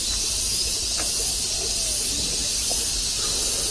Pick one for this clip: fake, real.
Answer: real